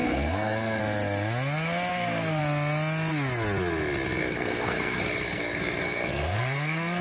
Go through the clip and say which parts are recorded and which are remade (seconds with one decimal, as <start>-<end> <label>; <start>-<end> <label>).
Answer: 0.0-0.8 remade; 0.8-1.9 recorded; 1.9-2.4 remade; 2.4-4.2 recorded; 4.2-7.0 remade